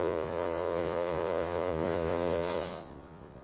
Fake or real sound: fake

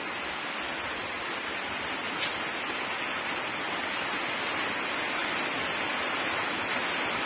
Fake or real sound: real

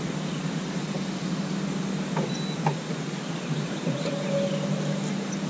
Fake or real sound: real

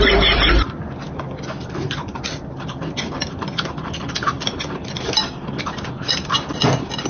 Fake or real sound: real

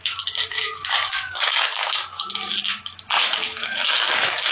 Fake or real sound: fake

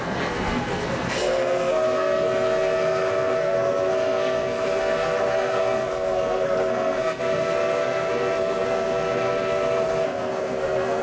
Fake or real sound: fake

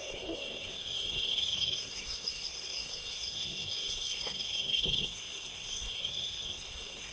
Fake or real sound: fake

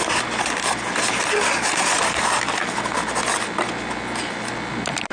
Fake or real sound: real